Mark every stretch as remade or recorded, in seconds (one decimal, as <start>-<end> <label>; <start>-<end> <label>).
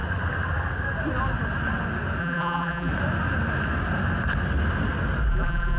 0.0-2.2 recorded; 2.2-2.9 remade; 2.9-5.3 recorded; 5.3-5.8 remade